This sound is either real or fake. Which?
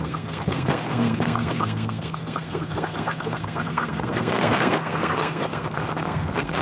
fake